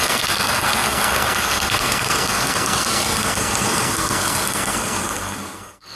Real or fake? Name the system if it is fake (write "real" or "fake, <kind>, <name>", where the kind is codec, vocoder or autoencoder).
fake, codec, SNAC